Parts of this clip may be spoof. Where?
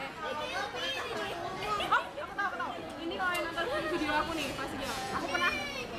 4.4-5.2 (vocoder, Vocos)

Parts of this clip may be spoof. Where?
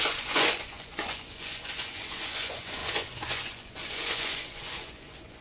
0.0-5.4 (vocoder, Vocos)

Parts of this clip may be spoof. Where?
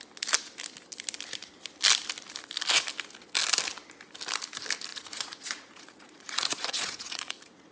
4.9-7.7 (vocoder, Vocos)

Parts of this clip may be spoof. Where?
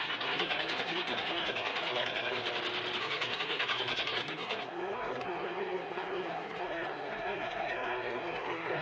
0.0-2.4 (codec, SNAC); 3.0-8.8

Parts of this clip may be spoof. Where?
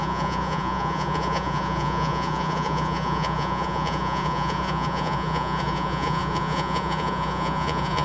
0.0-8.0 (vocoder, Vocos)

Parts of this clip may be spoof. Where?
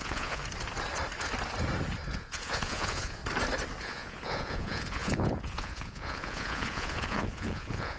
0.0-0.4 (vocoder, Vocos); 2.1-3.2; 3.8-8.0